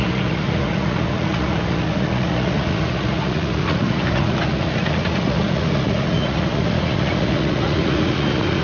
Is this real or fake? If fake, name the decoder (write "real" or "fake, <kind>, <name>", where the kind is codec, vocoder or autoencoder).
fake, vocoder, Vocos